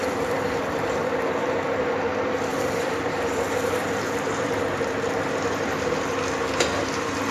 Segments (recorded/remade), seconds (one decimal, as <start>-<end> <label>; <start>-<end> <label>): 0.0-1.8 remade; 1.8-2.5 recorded; 2.5-4.6 remade; 4.6-7.3 recorded